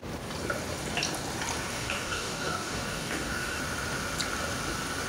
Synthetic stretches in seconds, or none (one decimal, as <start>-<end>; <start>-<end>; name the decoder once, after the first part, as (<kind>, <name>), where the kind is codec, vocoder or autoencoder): 1.7-3.6 (codec, DAC)